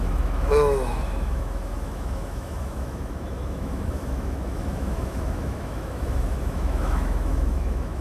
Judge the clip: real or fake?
fake